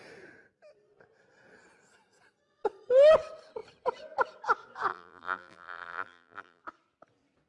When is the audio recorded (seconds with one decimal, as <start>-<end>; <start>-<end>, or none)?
0.0-4.9; 6.6-7.5